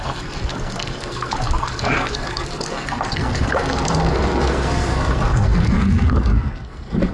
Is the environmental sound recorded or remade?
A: remade